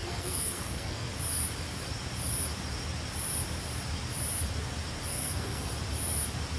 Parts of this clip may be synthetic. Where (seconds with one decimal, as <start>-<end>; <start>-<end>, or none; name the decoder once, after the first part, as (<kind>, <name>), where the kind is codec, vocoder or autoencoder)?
0.0-1.1 (codec, SNAC); 5.1-5.7